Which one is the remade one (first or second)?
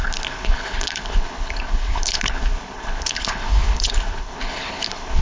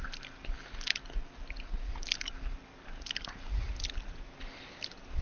first